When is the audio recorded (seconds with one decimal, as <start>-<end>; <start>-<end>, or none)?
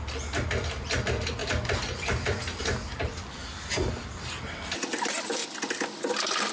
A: 0.0-6.5